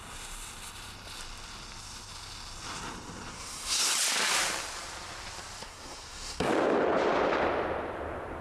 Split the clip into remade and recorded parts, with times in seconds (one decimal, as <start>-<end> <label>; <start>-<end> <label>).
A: 0.0-3.3 recorded; 3.3-3.9 remade; 3.9-5.6 recorded; 5.6-6.5 remade; 6.5-8.4 recorded